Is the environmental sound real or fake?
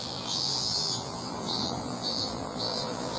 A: fake